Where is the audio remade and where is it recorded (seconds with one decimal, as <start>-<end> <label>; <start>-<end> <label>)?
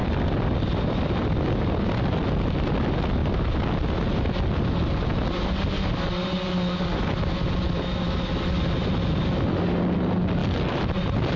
0.0-1.4 remade; 1.4-11.4 recorded